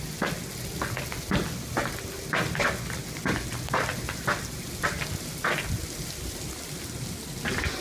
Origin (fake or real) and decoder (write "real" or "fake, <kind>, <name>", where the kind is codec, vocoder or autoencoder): real